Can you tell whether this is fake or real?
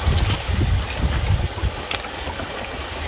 real